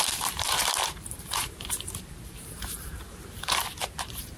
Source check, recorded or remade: remade